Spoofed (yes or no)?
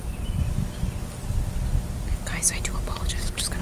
no